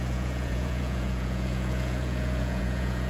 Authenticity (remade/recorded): remade